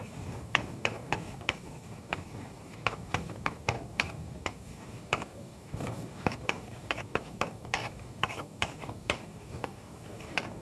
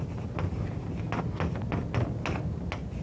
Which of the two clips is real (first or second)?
second